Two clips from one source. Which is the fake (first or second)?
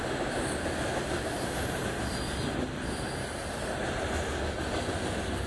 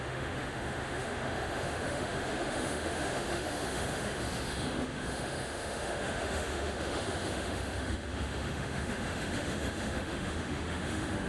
second